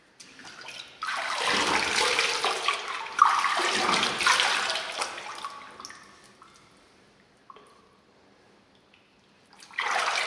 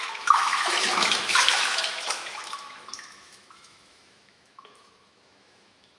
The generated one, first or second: second